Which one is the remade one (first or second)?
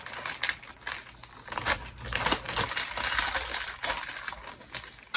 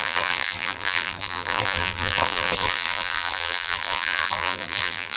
second